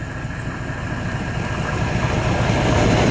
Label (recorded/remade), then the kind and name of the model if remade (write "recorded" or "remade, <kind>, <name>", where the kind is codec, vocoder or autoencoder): recorded